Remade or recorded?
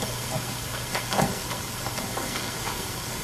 remade